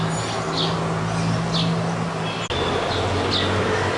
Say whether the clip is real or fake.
real